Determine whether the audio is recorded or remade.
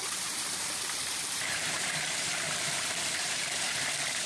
remade